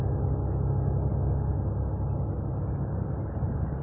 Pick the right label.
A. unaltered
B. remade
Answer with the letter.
A